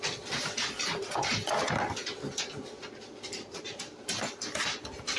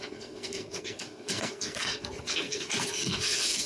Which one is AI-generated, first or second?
second